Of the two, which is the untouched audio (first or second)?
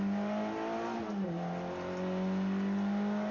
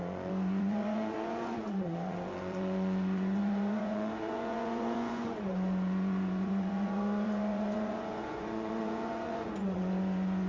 first